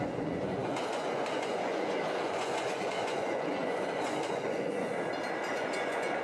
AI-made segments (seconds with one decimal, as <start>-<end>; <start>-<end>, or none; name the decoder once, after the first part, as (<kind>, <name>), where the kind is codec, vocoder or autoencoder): 0.0-4.9 (vocoder, Vocos); 5.5-6.2